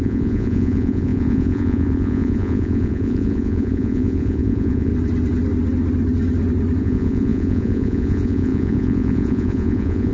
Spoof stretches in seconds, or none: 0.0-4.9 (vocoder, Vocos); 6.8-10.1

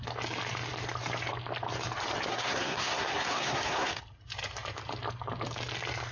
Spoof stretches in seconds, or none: 2.3-4.0 (codec, SNAC)